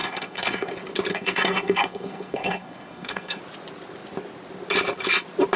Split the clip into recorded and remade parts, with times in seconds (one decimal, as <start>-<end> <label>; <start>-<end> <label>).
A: 0.0-0.7 remade; 0.7-1.1 recorded; 1.1-3.4 remade; 3.4-5.6 recorded